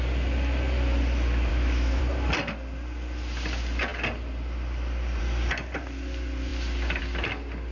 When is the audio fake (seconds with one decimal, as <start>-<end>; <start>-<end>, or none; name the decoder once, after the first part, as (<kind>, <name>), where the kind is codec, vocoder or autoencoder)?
1.5-2.0 (autoencoder, DAC-VAE)